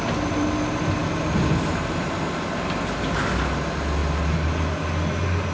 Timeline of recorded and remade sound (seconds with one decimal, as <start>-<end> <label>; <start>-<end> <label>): 0.0-5.5 recorded